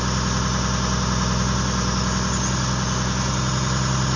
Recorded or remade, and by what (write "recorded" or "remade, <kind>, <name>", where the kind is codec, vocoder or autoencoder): recorded